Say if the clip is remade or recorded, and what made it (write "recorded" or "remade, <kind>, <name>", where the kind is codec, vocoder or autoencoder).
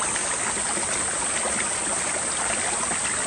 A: recorded